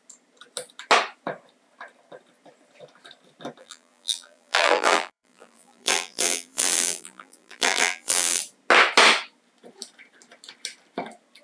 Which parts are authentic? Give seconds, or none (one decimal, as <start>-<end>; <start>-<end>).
0.0-3.6; 8.4-11.4